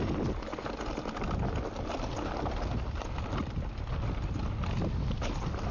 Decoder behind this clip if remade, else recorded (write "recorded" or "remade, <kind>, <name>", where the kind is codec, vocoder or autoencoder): recorded